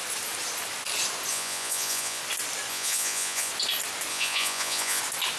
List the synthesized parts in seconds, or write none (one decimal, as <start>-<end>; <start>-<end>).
1.3-2.2; 2.7-3.5; 4.1-5.0